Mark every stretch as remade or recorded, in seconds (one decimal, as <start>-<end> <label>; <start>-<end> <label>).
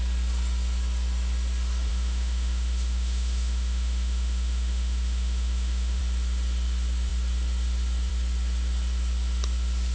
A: 0.0-1.9 recorded; 1.9-6.0 remade; 6.0-9.9 recorded